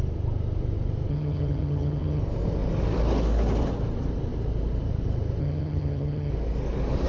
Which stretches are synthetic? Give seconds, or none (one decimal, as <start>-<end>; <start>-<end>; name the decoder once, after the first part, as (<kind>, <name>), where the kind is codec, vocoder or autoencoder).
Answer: 1.1-2.2 (vocoder, HiFi-GAN); 5.4-6.3